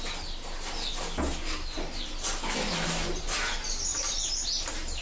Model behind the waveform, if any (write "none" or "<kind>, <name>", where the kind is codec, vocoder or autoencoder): none